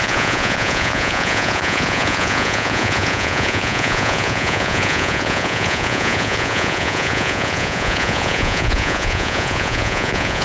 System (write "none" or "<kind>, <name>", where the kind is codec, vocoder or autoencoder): vocoder, Vocos